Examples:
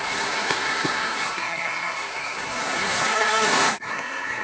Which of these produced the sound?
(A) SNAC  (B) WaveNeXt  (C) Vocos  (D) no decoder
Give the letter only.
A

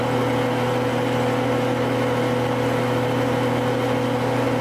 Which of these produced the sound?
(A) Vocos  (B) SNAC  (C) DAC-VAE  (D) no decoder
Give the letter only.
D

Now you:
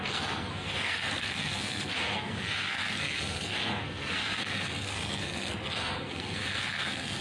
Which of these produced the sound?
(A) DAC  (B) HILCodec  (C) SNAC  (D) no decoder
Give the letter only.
C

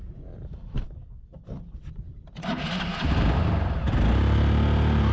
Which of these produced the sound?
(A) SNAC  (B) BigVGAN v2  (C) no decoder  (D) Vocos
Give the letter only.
C